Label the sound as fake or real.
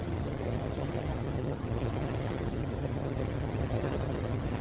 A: fake